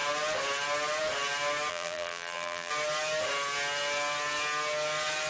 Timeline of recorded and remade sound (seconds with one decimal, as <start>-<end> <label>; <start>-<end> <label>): 0.0-1.7 recorded; 1.7-2.7 remade; 2.7-5.3 recorded